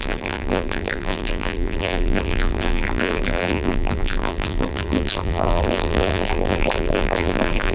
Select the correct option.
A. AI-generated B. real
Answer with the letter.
A